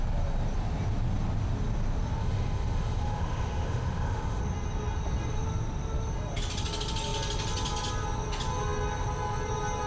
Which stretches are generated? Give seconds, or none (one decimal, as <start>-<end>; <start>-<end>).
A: 2.2-4.4